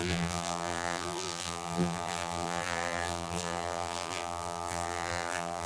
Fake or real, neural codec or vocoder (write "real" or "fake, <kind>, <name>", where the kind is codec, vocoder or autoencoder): fake, vocoder, BigVGAN v2